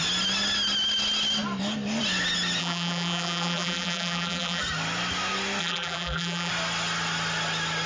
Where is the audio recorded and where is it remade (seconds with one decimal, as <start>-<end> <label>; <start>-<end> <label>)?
0.0-2.6 recorded; 2.6-4.6 remade; 4.6-5.6 recorded; 5.6-6.5 remade; 6.5-7.9 recorded